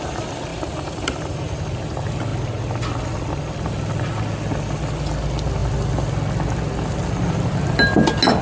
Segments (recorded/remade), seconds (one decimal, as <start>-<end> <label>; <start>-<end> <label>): 0.0-0.5 recorded; 0.5-1.6 remade; 1.6-8.4 recorded